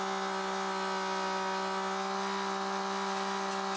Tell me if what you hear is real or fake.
real